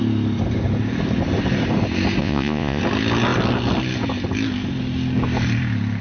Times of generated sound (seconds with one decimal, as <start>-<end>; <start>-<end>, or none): 2.2-2.8